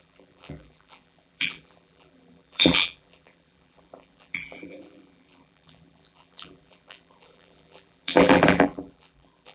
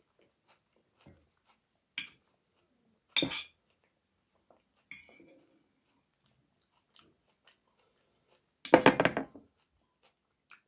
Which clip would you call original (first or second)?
second